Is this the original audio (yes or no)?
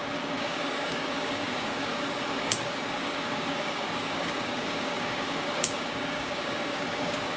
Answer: no